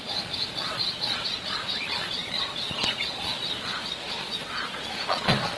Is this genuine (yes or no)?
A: no